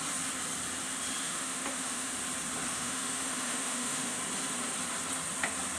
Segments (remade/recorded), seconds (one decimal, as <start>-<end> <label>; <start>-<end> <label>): 0.0-1.2 recorded; 1.2-2.1 remade; 2.1-2.7 recorded; 2.7-4.2 remade; 4.2-5.8 recorded